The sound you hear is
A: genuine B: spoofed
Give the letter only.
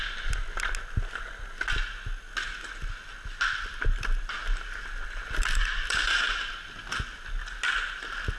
A